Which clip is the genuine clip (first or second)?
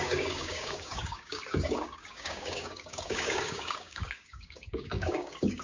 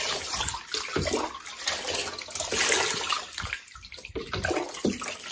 second